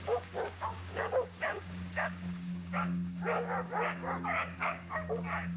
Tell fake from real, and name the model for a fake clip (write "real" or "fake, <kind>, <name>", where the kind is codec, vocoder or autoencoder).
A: fake, codec, DAC